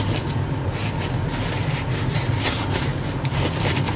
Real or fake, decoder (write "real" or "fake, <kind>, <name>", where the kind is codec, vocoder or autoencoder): real